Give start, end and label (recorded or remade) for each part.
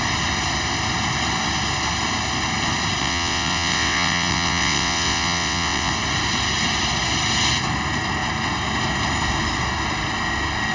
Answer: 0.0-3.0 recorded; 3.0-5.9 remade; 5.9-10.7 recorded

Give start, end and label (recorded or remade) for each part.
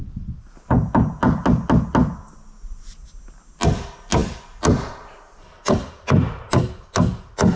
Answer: 0.0-7.6 recorded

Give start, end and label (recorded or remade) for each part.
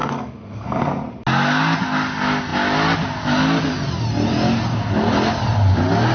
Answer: 0.0-0.9 remade; 0.9-6.1 recorded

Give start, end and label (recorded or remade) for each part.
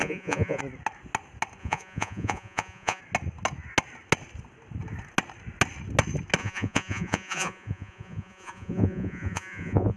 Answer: 0.0-0.6 remade; 0.6-1.6 recorded; 1.6-3.0 remade; 3.0-6.4 recorded; 6.4-10.0 remade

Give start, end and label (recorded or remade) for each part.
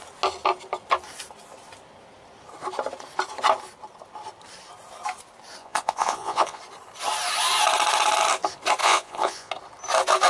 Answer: 0.0-5.6 recorded; 5.6-6.6 remade; 6.6-8.8 recorded; 8.8-9.5 remade; 9.5-10.3 recorded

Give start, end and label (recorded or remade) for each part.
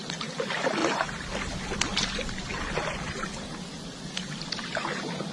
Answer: 0.0-5.3 recorded